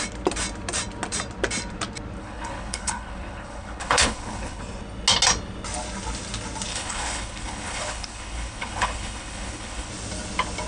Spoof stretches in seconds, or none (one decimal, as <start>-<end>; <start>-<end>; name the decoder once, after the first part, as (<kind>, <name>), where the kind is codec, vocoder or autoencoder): 2.2-4.6 (codec, HILCodec); 6.7-9.9